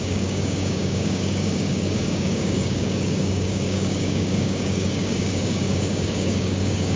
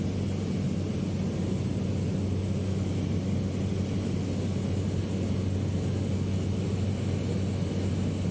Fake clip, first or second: first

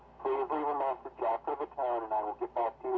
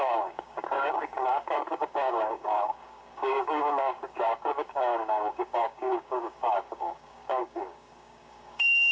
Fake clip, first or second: second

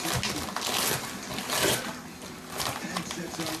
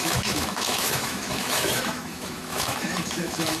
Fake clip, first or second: second